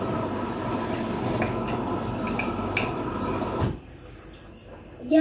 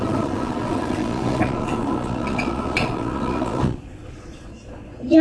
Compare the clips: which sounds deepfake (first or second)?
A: second